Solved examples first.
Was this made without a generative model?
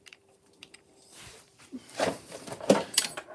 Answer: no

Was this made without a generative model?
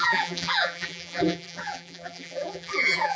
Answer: no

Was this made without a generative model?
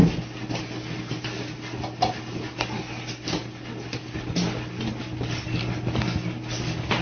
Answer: yes